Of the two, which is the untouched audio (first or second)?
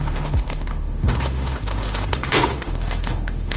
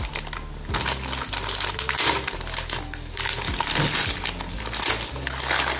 second